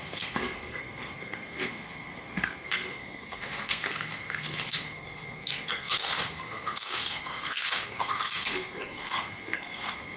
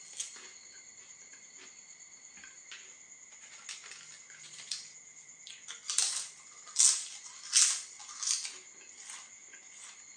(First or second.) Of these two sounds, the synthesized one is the first